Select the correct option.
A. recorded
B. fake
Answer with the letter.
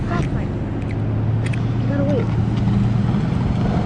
A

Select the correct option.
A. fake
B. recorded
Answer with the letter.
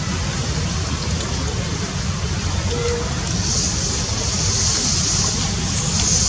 B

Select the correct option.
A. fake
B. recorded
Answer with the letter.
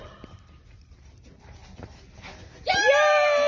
B